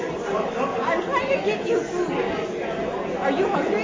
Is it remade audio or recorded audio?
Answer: recorded